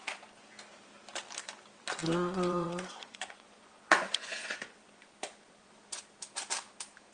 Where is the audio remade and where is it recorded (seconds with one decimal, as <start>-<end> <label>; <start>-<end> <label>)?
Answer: 0.0-0.6 remade; 0.6-2.0 recorded; 2.0-6.0 remade; 6.0-7.1 recorded